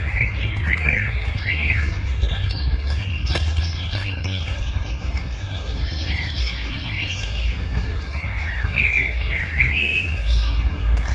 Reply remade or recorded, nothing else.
remade